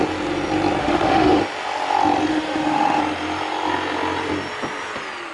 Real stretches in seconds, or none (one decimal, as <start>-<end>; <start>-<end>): 0.0-0.8; 1.4-2.3; 3.0-5.3